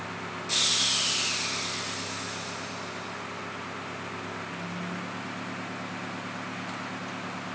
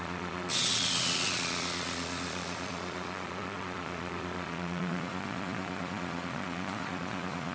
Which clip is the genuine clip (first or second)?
first